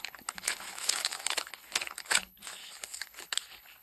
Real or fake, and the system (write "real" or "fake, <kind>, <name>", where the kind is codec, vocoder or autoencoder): fake, codec, HILCodec